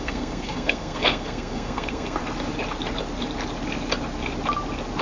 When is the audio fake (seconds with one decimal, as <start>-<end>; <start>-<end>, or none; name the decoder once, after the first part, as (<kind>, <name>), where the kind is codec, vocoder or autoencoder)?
0.0-2.2 (codec, SNAC)

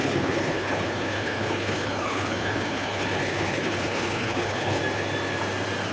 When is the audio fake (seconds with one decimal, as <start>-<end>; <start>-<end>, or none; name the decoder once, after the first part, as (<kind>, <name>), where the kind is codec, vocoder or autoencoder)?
0.0-4.8 (codec, HILCodec)

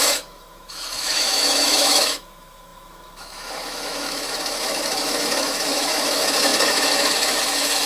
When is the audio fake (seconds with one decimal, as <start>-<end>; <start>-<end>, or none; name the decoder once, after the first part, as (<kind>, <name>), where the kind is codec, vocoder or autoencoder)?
0.0-7.9 (autoencoder, DAC-VAE)

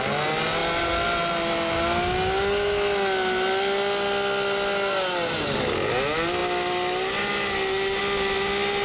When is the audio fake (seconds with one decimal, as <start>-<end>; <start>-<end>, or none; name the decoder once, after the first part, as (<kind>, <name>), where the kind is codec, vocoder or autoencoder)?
none

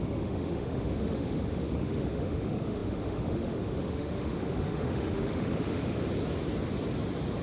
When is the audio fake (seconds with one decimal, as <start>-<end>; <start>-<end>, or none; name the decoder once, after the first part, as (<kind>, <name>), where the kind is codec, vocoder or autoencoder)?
0.0-6.0 (autoencoder, DAC-VAE)